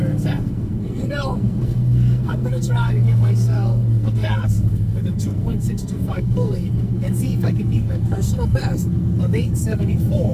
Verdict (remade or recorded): remade